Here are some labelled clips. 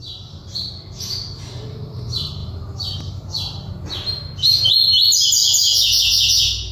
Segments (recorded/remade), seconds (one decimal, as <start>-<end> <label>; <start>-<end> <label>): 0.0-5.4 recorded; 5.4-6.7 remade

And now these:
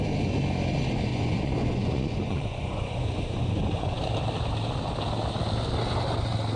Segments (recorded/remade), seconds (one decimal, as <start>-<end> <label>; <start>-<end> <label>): 0.0-1.1 recorded; 1.1-4.0 remade; 4.0-6.6 recorded

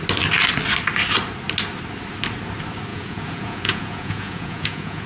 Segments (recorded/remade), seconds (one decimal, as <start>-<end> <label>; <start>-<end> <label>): 0.0-2.9 recorded; 2.9-5.1 remade

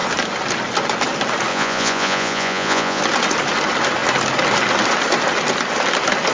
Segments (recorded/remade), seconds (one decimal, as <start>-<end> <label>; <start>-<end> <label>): 0.0-1.5 recorded; 1.5-3.0 remade; 3.0-6.3 recorded

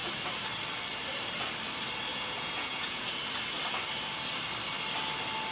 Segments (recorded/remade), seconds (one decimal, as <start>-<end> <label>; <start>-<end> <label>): 0.0-2.1 recorded; 2.1-3.1 remade; 3.1-5.5 recorded